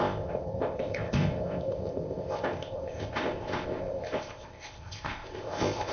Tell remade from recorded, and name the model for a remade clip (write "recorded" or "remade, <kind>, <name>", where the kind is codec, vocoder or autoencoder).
remade, codec, ZipCodec